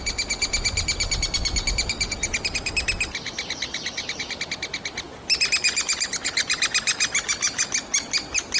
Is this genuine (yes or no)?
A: yes